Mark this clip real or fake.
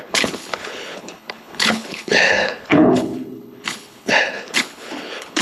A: fake